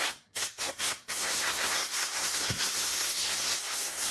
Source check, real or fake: fake